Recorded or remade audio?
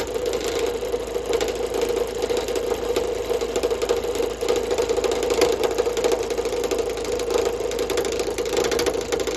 recorded